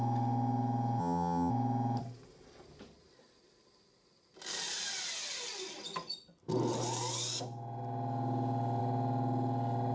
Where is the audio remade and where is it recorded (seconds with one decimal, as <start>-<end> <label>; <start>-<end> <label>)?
0.0-1.0 recorded; 1.0-1.5 remade; 1.5-9.9 recorded